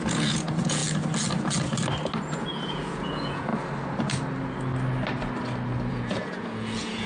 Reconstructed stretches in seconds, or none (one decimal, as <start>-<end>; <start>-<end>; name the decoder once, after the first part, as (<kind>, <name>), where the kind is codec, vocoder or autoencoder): 0.0-0.8 (vocoder, Vocos); 2.2-3.5; 5.9-7.1